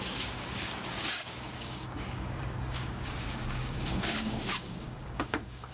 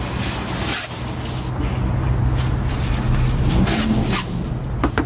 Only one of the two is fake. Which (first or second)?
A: first